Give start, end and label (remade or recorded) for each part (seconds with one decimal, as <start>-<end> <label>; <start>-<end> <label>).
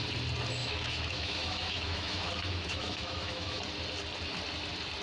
0.0-0.6 recorded; 0.6-3.6 remade; 3.6-5.0 recorded